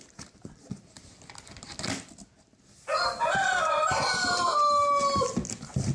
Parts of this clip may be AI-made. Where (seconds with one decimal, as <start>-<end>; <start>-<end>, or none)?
none